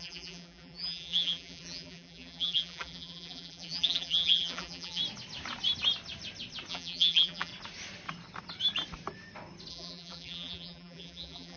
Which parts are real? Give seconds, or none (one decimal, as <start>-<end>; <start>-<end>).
5.0-6.7; 7.5-9.7